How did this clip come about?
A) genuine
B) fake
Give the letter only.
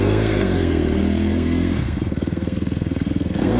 B